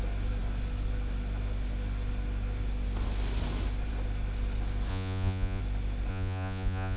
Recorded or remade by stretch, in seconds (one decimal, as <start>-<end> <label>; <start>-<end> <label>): 0.0-4.9 recorded; 4.9-5.6 remade; 5.6-6.1 recorded; 6.1-7.0 remade